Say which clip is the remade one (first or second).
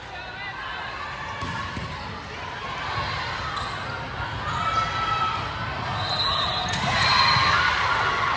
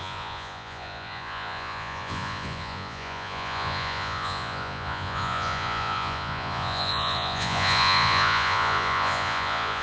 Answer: second